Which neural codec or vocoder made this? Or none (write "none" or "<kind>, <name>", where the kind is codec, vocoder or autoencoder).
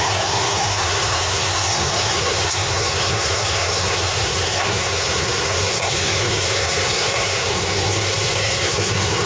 codec, SNAC